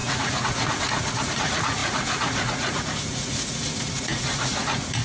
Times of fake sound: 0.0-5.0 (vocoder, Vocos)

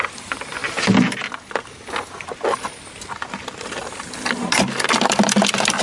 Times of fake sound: none

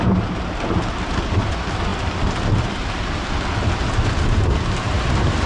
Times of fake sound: none

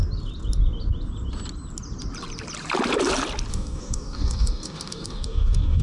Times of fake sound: 3.5-5.8 (codec, DAC)

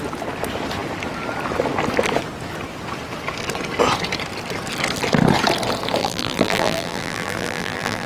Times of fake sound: 6.0-8.1 (vocoder, BigVGAN v2)

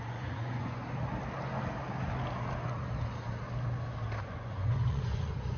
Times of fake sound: 0.0-0.8 (vocoder, Vocos); 4.2-5.6